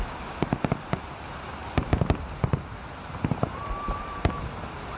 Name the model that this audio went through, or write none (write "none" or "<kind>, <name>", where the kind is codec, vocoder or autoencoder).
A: none